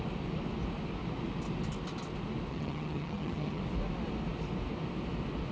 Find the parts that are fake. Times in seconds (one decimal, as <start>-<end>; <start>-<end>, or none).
2.5-3.6